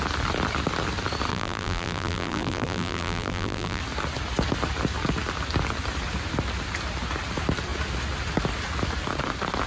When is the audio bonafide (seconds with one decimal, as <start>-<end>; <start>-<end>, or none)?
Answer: 0.0-1.3; 3.8-9.7